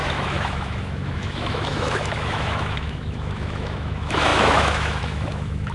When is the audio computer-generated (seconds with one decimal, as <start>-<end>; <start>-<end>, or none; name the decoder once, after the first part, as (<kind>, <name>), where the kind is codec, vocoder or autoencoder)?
0.0-5.7 (autoencoder, DAC-VAE)